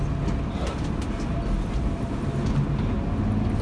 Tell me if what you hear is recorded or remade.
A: recorded